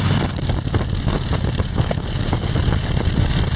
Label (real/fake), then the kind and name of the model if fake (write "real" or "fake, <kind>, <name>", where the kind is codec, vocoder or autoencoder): real